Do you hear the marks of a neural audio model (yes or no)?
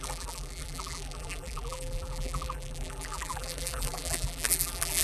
yes